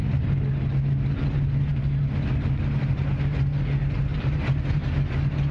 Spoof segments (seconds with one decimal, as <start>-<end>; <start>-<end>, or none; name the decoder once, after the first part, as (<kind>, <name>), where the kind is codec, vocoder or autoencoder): 4.1-4.9 (vocoder, BigVGAN v2)